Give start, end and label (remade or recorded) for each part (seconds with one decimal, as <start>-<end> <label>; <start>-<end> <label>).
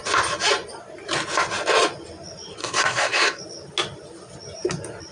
0.0-2.6 recorded; 2.6-3.4 remade; 3.4-5.1 recorded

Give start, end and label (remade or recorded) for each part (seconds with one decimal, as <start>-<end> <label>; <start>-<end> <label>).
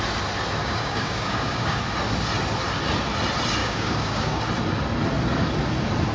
0.0-0.6 recorded; 0.6-1.8 remade; 1.8-3.6 recorded; 3.6-4.4 remade; 4.4-6.1 recorded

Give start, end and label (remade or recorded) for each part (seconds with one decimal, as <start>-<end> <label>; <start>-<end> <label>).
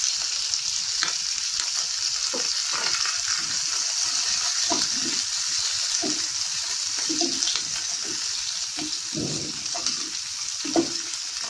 0.0-11.5 recorded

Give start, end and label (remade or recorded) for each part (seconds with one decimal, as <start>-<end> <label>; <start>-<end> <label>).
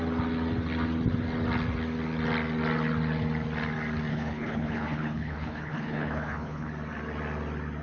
0.0-4.1 recorded; 4.1-6.7 remade; 6.7-7.8 recorded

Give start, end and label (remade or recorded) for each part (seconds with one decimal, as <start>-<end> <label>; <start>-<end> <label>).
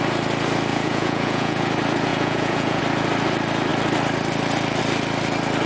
0.0-0.7 recorded; 0.7-1.7 remade; 1.7-2.1 recorded; 2.1-2.8 remade; 2.8-5.7 recorded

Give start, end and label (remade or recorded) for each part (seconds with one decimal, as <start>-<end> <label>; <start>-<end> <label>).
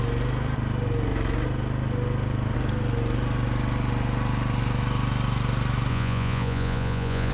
0.0-5.9 recorded; 5.9-7.3 remade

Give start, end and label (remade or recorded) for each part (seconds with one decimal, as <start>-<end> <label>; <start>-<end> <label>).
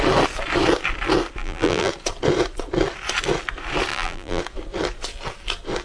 0.0-1.4 recorded; 1.4-1.9 remade; 1.9-3.9 recorded; 3.9-4.4 remade; 4.4-5.8 recorded